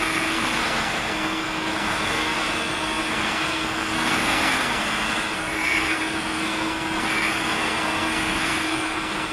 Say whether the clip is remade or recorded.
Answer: remade